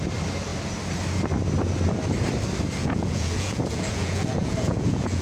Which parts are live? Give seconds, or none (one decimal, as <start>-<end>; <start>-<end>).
0.0-2.8